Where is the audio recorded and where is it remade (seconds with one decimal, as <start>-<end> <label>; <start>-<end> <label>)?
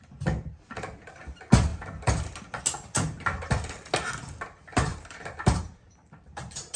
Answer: 0.0-4.9 recorded; 4.9-6.8 remade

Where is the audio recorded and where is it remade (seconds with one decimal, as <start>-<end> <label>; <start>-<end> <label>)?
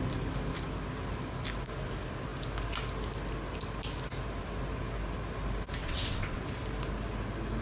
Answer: 0.0-5.8 recorded; 5.8-6.4 remade; 6.4-7.6 recorded